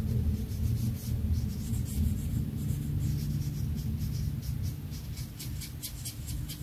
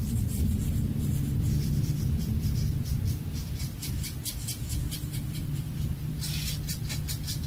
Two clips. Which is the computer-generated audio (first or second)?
second